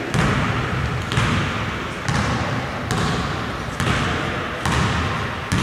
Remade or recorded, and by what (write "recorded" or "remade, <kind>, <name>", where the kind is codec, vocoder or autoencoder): recorded